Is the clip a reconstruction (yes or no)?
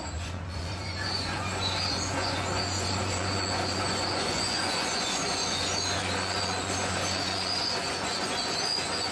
yes